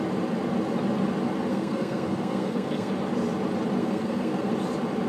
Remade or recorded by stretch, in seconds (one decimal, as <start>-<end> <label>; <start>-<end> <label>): 0.0-1.5 recorded; 1.5-2.9 remade; 2.9-3.8 recorded; 3.8-4.5 remade; 4.5-5.1 recorded